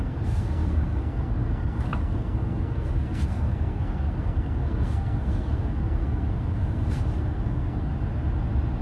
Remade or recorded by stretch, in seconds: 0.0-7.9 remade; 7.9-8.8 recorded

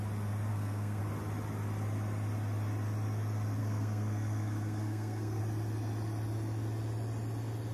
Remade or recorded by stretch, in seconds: 0.0-0.5 recorded; 0.5-1.0 remade; 1.0-3.6 recorded; 3.6-5.4 remade; 5.4-7.7 recorded

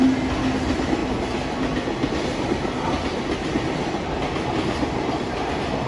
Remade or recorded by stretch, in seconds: 0.0-5.9 recorded

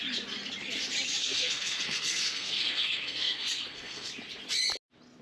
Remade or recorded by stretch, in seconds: 0.0-1.2 recorded; 1.2-4.1 remade; 4.1-5.2 recorded

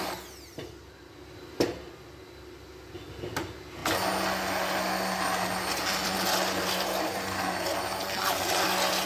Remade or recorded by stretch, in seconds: 0.0-9.1 recorded

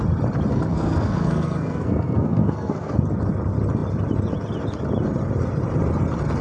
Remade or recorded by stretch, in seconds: 0.0-0.5 recorded; 0.5-2.9 remade; 2.9-6.4 recorded

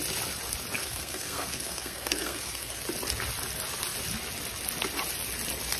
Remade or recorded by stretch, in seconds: 0.0-0.8 recorded; 0.8-2.8 remade; 2.8-5.8 recorded